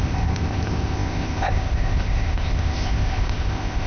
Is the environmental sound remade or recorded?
remade